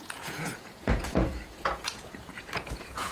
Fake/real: fake